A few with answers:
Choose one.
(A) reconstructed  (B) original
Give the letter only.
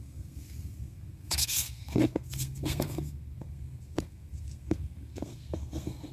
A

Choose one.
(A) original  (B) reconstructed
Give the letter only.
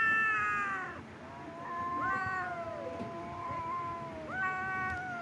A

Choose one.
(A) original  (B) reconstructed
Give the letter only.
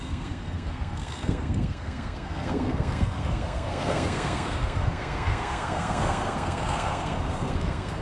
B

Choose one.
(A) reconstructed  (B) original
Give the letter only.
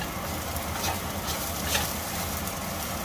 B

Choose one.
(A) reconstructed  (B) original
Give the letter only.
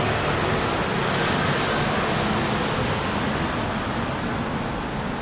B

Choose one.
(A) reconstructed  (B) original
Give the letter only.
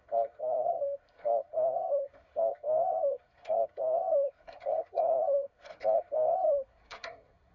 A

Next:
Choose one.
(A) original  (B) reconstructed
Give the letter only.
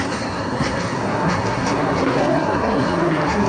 B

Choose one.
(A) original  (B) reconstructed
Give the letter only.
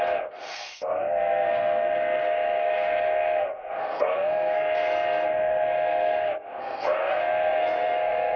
B